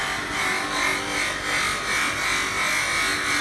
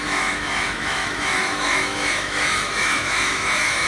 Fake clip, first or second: second